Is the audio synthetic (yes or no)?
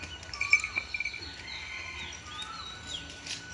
no